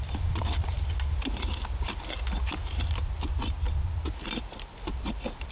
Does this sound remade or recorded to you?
recorded